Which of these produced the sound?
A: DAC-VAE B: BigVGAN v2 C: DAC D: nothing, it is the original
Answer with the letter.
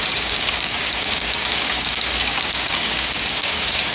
C